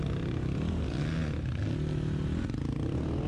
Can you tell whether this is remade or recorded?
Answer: recorded